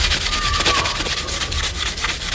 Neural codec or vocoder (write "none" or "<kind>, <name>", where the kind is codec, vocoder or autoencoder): none